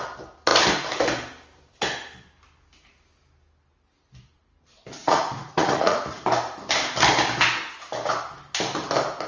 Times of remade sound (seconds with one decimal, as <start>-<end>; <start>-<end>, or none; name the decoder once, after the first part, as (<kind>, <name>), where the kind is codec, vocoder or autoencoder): 5.0-6.2 (vocoder, Vocos)